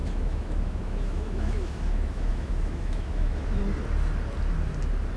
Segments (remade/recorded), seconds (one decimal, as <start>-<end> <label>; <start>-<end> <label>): 0.0-3.6 remade; 3.6-5.2 recorded